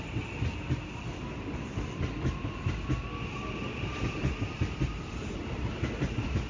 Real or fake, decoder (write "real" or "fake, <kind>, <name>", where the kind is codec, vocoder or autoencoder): real